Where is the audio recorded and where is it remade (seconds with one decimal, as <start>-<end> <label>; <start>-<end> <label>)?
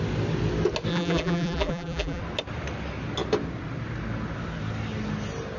0.0-0.9 recorded; 0.9-2.2 remade; 2.2-5.6 recorded